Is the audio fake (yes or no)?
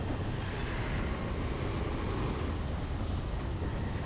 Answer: no